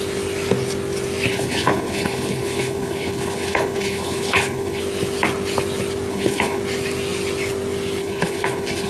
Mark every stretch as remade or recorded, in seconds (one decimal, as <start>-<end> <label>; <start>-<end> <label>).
0.0-1.3 recorded; 1.3-4.8 remade; 4.8-6.1 recorded; 6.1-6.6 remade; 6.6-8.0 recorded; 8.0-8.9 remade